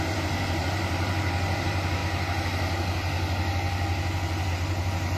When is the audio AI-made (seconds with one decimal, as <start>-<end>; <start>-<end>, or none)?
0.0-2.0; 4.5-5.2